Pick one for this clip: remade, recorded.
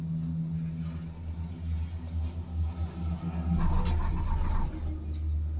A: recorded